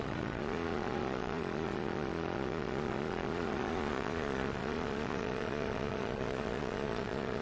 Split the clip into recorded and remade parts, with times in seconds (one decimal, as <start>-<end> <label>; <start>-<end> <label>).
0.0-7.4 remade